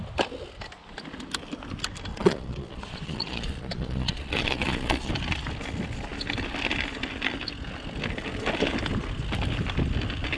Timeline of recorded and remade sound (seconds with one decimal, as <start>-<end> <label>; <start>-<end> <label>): 0.0-2.1 recorded; 2.1-5.1 remade; 5.1-10.4 recorded